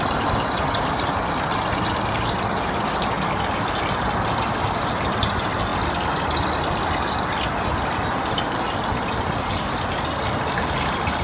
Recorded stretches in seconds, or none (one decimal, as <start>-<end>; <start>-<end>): 0.0-11.2